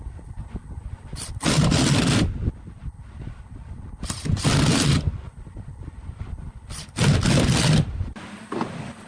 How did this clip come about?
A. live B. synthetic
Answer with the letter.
A